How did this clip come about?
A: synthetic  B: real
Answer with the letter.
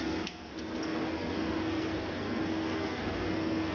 A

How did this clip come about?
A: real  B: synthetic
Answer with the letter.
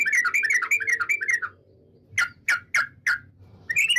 A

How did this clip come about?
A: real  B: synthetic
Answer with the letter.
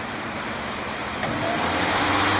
A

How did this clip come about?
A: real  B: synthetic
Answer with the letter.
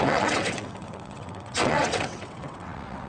B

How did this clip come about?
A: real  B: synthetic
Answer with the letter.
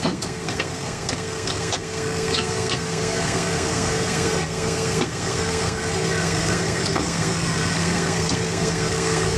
B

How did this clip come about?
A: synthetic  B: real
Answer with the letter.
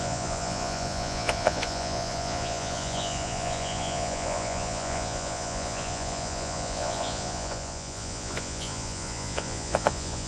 A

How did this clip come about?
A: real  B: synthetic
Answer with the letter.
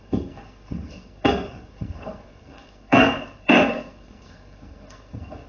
B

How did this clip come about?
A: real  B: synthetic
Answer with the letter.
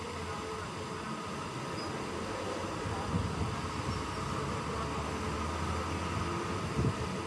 A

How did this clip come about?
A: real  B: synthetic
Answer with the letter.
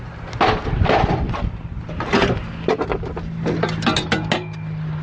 A